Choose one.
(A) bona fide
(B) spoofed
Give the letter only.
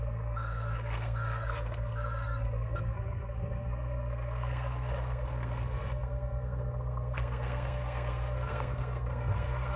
B